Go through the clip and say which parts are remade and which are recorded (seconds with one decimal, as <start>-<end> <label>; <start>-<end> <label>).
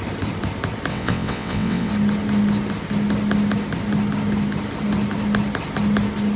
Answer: 0.0-0.9 recorded; 0.9-1.9 remade; 1.9-6.4 recorded